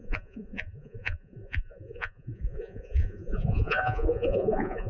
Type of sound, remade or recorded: remade